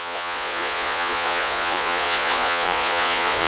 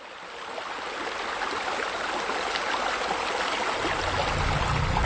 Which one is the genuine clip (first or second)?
second